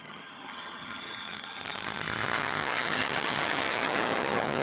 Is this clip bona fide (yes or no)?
no